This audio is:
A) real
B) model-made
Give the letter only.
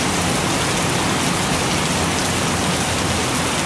A